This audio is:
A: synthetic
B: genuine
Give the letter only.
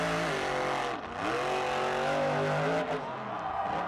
B